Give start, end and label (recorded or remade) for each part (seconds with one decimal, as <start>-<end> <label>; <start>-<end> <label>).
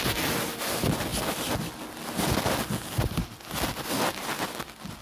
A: 0.0-5.0 recorded